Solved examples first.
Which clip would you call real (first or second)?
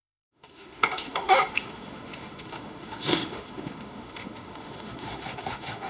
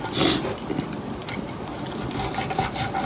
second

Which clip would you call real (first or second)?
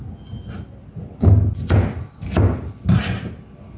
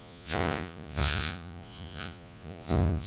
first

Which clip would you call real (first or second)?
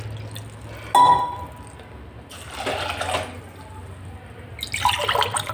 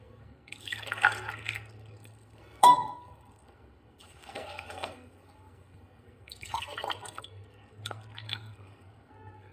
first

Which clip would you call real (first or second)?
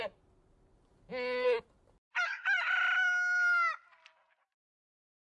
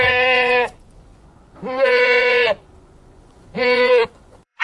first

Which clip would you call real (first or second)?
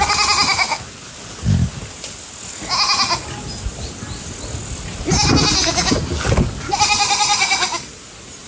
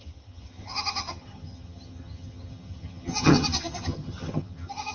first